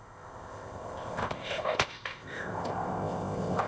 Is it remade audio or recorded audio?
remade